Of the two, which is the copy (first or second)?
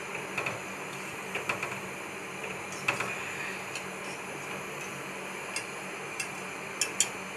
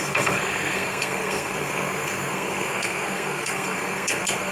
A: second